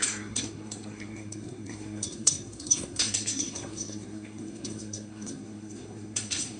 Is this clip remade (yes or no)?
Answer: yes